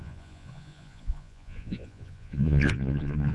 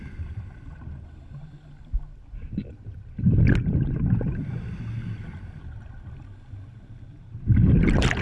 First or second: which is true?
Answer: second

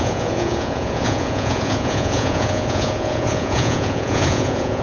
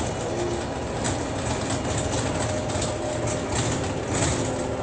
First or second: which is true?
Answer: second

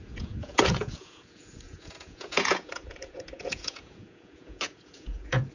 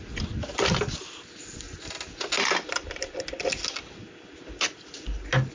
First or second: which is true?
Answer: second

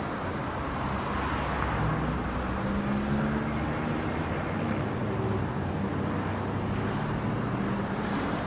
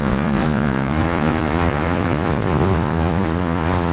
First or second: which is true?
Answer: first